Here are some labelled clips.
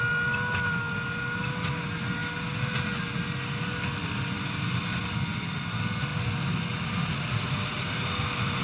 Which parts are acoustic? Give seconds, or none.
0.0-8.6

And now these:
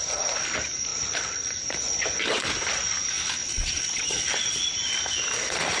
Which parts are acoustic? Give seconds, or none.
0.0-3.4; 4.2-5.8

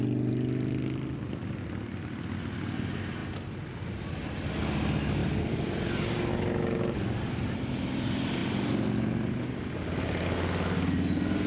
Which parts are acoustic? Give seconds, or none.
0.0-5.2; 6.3-11.5